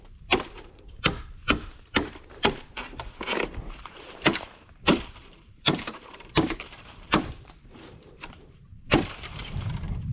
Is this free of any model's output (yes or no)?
no